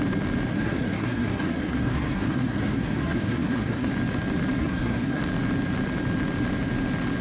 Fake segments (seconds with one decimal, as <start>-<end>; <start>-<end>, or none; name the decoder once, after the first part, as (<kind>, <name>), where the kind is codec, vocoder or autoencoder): 0.5-3.9 (codec, SNAC); 4.6-5.2